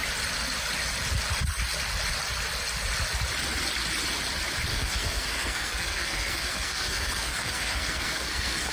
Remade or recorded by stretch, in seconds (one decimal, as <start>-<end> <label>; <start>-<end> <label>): 0.0-4.7 recorded; 4.7-8.7 remade